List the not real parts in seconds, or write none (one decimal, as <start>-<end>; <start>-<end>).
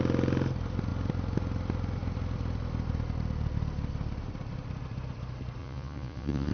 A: 5.6-6.5